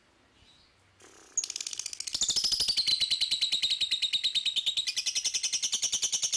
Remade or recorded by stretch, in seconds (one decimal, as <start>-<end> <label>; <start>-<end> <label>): 0.0-2.9 recorded; 2.9-3.7 remade; 3.7-6.4 recorded